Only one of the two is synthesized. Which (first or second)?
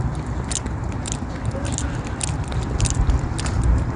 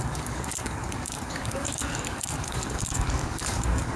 second